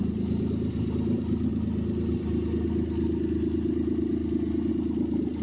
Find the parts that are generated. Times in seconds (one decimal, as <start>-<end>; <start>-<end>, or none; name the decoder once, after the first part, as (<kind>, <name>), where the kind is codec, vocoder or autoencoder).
none